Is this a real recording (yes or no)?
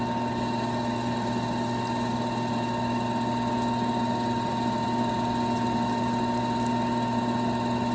yes